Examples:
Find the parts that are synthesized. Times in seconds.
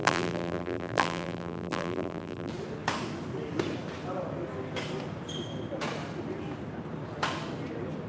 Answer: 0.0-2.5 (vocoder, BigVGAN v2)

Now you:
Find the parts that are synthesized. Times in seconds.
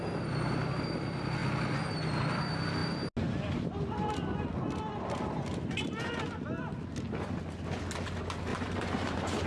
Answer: 8.5-9.5 (vocoder, BigVGAN v2)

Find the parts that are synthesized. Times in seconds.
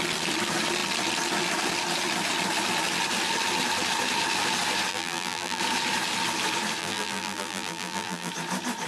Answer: 4.9-5.6 (vocoder, BigVGAN v2); 6.8-8.3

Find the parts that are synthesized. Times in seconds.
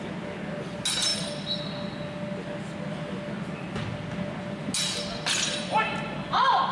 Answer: none